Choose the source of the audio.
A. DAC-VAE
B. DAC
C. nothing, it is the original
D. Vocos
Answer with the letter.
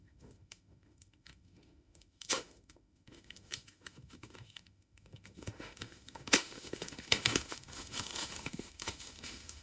A